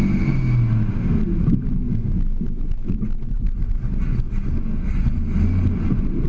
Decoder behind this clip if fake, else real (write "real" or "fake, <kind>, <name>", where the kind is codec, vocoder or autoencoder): real